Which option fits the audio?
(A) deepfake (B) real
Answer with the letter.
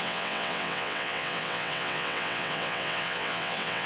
A